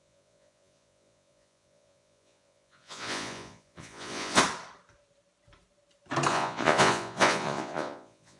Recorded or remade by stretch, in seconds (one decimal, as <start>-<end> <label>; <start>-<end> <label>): 0.0-4.4 remade; 4.4-6.3 recorded; 6.3-8.4 remade